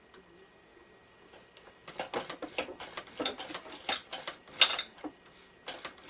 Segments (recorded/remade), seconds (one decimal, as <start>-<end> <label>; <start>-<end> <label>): 0.0-6.1 recorded